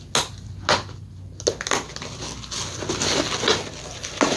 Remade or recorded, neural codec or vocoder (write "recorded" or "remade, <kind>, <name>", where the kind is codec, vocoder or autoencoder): recorded